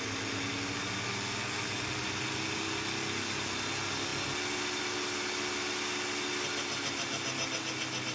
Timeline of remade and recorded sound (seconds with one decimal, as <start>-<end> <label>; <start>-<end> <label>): 0.0-8.1 recorded